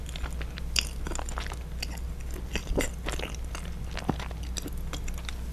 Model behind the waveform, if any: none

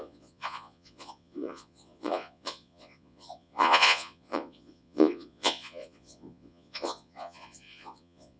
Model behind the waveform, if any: vocoder, Vocos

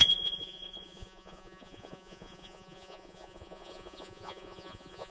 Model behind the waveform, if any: vocoder, Vocos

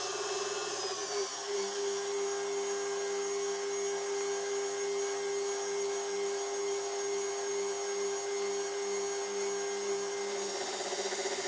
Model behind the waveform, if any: none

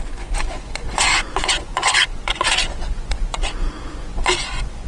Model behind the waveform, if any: vocoder, Vocos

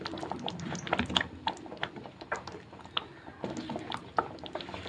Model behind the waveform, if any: none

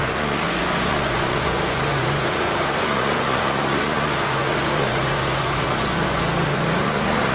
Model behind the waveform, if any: vocoder, Vocos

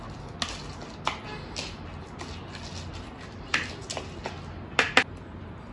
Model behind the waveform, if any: none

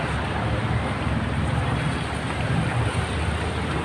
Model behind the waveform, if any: none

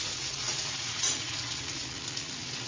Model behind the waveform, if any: vocoder, Vocos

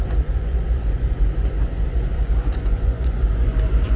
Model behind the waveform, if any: vocoder, Vocos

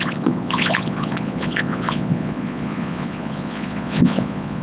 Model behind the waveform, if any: vocoder, Vocos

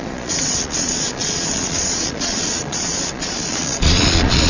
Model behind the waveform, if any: vocoder, Vocos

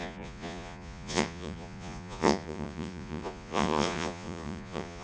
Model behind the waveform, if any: vocoder, Vocos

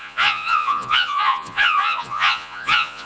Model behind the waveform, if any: vocoder, Vocos